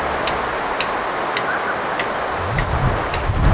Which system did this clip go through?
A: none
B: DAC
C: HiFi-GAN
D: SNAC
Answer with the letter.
A